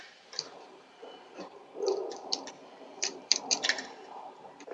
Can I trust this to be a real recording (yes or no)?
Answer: no